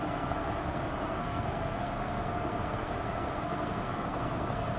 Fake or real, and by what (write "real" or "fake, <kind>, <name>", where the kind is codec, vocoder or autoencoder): fake, codec, SNAC